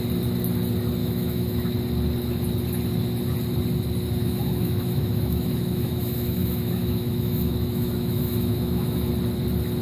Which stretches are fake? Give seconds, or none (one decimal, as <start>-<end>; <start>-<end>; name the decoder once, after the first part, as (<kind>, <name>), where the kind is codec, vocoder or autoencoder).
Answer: 1.0-1.7 (autoencoder, DAC-VAE); 4.2-9.1